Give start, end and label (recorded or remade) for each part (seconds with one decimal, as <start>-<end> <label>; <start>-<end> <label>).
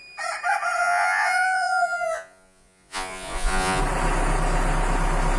0.0-0.8 recorded; 0.8-3.8 remade; 3.8-5.4 recorded